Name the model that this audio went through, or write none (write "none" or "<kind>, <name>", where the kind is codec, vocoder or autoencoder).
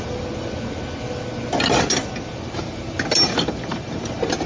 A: none